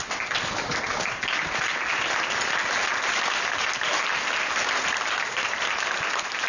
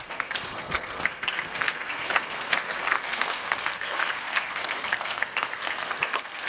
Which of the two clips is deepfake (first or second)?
second